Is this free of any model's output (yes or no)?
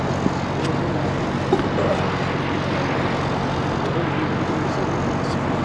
yes